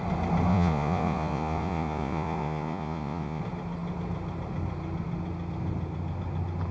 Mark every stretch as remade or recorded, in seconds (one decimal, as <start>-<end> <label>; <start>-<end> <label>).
0.0-0.5 recorded; 0.5-3.4 remade; 3.4-6.7 recorded